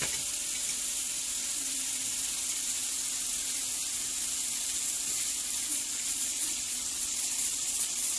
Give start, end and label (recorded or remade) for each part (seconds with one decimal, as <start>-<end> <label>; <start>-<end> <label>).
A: 0.0-5.7 recorded; 5.7-8.2 remade